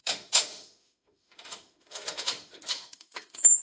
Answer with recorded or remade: remade